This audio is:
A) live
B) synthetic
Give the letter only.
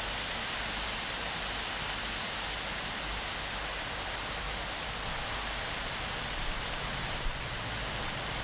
A